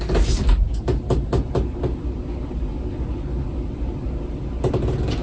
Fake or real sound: real